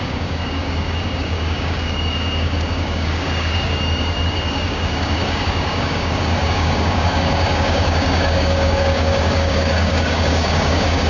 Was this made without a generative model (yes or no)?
no